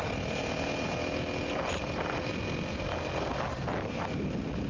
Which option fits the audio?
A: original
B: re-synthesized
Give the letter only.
A